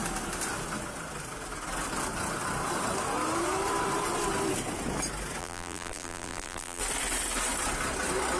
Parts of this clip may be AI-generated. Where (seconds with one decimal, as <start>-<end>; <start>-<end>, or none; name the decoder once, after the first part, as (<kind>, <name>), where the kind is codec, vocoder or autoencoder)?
5.4-6.8 (vocoder, BigVGAN v2)